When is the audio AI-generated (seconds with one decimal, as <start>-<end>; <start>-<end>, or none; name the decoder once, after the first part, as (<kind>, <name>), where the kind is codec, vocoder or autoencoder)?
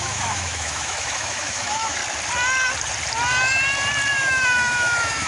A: 0.0-2.0 (autoencoder, DAC-VAE); 4.1-5.3